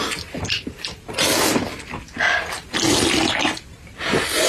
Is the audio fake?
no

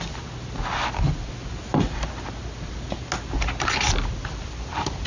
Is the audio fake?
no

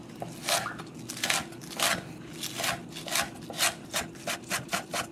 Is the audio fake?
no